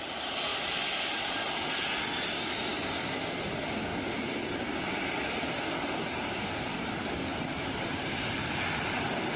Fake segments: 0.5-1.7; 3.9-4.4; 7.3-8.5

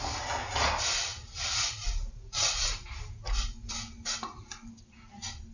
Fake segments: none

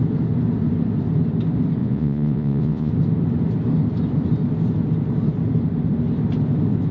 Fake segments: 1.8-2.9

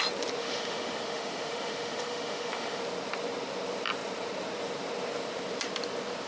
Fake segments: 0.4-2.8

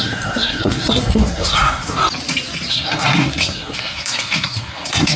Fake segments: 0.0-2.0; 2.7-5.2

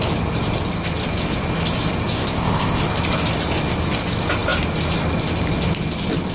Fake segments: 2.1-2.8

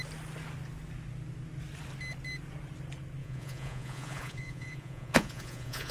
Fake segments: 3.2-5.9

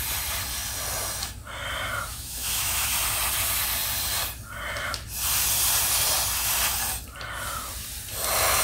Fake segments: 2.1-2.9